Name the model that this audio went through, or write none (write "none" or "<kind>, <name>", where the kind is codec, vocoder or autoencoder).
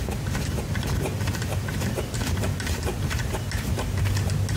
none